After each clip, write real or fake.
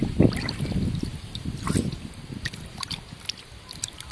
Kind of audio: real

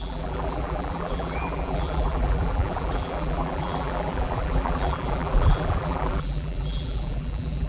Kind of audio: fake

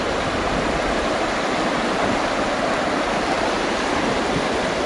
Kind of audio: real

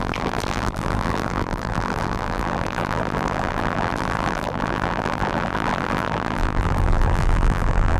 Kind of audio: fake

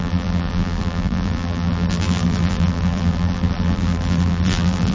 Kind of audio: fake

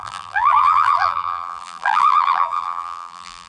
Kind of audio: fake